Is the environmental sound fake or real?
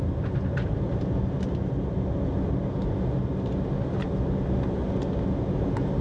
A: real